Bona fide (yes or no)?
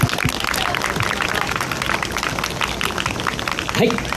yes